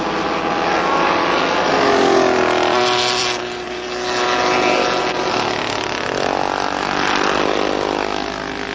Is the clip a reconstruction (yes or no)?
no